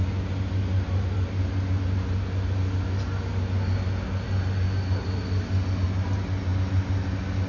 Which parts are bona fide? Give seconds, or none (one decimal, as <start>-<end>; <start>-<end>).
0.0-7.5